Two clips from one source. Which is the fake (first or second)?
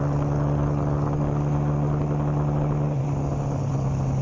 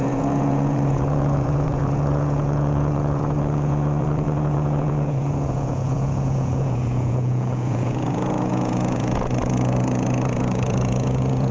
second